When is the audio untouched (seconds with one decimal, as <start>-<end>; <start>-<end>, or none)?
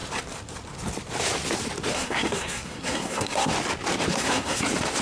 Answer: 0.0-1.9; 3.5-4.1; 4.6-5.0